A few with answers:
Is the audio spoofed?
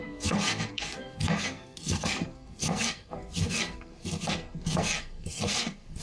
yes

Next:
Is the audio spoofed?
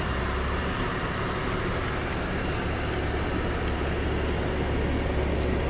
no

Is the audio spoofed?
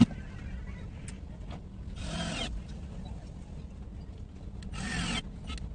no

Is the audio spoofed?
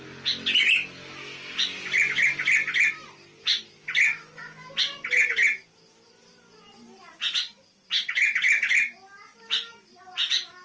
no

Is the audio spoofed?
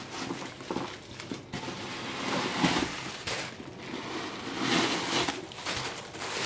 no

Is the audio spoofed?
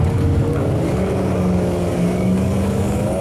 yes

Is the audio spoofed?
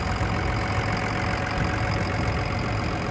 no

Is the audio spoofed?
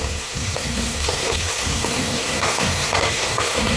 yes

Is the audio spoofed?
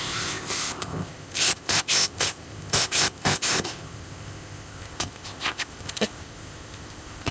yes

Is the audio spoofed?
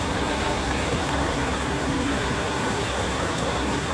yes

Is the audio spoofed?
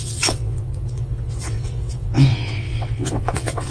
yes